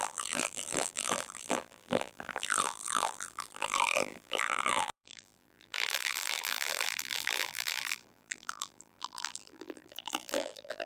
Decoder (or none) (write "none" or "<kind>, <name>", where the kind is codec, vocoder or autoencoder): vocoder, BigVGAN v2